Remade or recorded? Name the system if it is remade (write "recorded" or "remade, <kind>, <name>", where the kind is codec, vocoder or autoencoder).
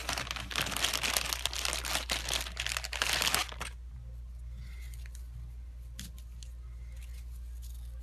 recorded